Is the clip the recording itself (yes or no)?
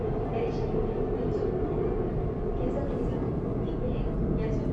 yes